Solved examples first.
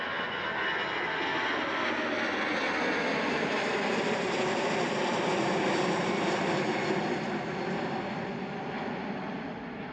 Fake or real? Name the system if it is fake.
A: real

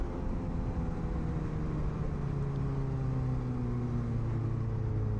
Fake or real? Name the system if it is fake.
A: real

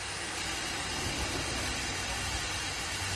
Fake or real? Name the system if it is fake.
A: real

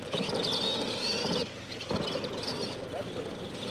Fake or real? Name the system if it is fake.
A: fake, vocoder, BigVGAN v2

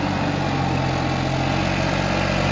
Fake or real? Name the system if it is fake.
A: real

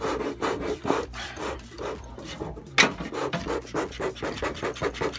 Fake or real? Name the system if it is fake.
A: real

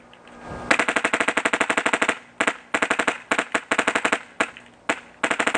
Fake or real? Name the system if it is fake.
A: real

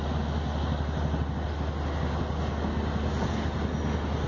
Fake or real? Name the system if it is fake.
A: real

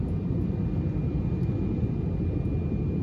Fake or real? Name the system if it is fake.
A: real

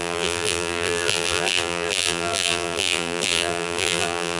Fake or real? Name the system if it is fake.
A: fake, vocoder, BigVGAN v2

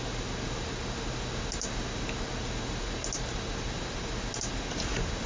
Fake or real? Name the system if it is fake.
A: real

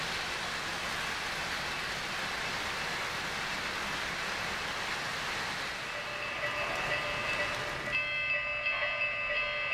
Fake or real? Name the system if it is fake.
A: real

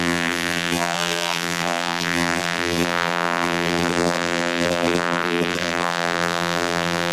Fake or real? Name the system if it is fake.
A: fake, vocoder, BigVGAN v2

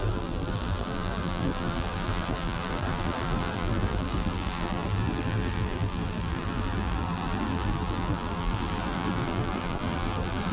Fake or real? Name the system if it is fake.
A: fake, vocoder, BigVGAN v2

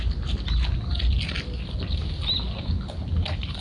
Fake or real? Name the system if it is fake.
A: real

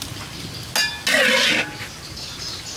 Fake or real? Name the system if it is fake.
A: real